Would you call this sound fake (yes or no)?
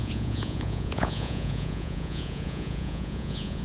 yes